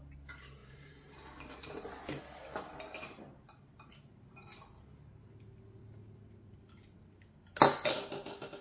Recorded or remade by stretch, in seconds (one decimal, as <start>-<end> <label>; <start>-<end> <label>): 0.0-0.6 recorded; 0.6-1.8 remade; 1.8-8.6 recorded